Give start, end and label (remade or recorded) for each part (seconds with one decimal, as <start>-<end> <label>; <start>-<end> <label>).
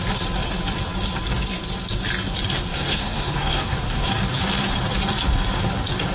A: 0.0-2.7 recorded; 2.7-4.1 remade; 4.1-6.1 recorded